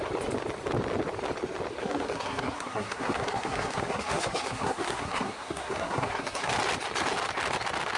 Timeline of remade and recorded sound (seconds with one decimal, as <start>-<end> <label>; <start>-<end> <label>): 0.0-1.8 recorded; 1.8-6.5 remade; 6.5-8.0 recorded